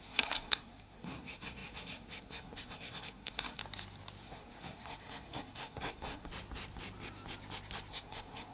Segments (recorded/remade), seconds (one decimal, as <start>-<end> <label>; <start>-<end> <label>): 0.0-3.6 remade; 3.6-4.2 recorded; 4.2-6.3 remade; 6.3-7.9 recorded; 7.9-8.5 remade